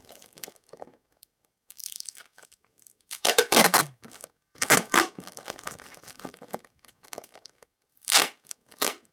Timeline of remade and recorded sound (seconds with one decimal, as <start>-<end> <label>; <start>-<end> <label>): 0.0-9.1 remade